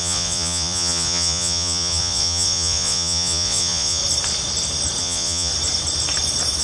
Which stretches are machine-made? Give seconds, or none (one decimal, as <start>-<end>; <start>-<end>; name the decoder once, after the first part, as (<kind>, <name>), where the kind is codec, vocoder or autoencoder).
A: 0.0-4.0 (vocoder, Vocos); 5.0-5.5